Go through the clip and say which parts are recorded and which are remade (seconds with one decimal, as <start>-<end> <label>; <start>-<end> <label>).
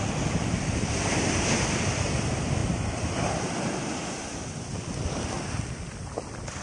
0.0-6.6 recorded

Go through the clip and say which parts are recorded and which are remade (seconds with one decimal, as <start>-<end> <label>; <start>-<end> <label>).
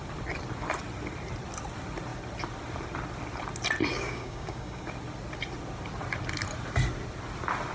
0.0-3.9 recorded; 3.9-4.9 remade; 4.9-7.7 recorded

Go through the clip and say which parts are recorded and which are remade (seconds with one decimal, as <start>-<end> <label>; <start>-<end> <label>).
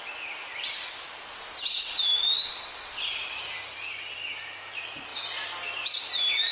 0.0-6.5 recorded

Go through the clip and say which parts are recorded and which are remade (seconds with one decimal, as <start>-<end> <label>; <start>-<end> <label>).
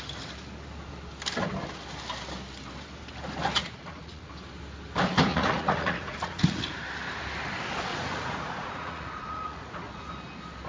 0.0-3.6 recorded; 3.6-4.3 remade; 4.3-5.3 recorded; 5.3-6.7 remade; 6.7-7.9 recorded; 7.9-10.1 remade; 10.1-10.7 recorded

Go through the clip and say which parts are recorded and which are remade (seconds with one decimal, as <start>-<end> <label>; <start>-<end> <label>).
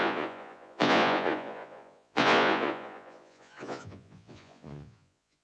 0.0-5.4 remade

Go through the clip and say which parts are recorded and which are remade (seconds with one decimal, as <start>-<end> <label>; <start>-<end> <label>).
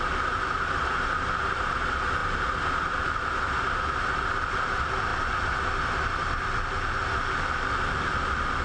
0.0-8.6 recorded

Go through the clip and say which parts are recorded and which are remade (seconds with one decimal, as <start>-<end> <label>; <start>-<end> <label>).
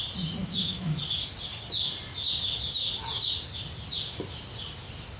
0.0-0.4 recorded; 0.4-1.0 remade; 1.0-5.2 recorded